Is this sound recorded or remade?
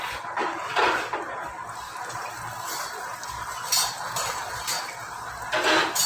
recorded